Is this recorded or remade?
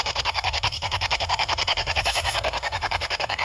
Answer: remade